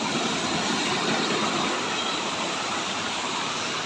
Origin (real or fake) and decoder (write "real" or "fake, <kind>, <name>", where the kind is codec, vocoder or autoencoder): real